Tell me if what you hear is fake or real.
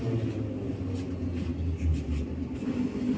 real